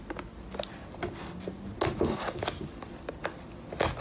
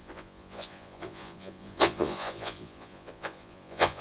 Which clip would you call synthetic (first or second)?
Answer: second